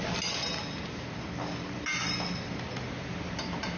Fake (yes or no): no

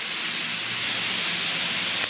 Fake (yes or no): no